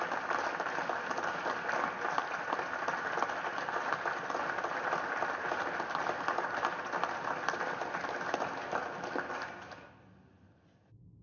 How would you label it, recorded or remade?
recorded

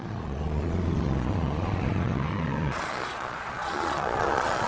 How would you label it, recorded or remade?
remade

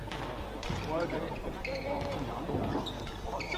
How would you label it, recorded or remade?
remade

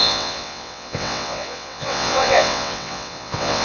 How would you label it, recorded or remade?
remade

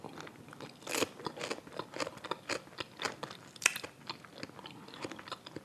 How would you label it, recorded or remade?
recorded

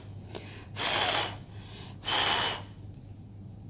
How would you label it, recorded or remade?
recorded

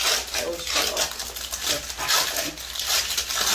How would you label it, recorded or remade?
recorded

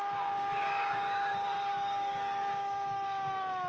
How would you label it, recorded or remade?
remade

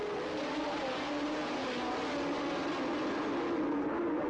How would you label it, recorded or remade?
recorded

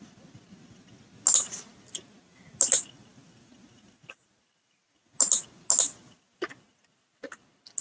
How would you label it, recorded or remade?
recorded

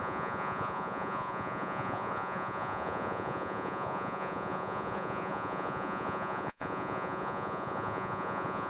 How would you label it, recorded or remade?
remade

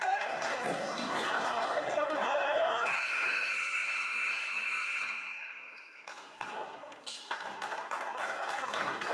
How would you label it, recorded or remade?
remade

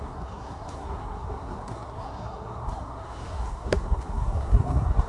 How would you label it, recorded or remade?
remade